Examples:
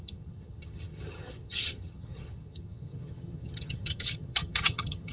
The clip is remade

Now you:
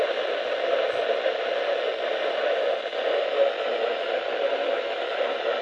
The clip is recorded